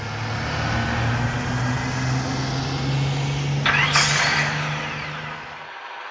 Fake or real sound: real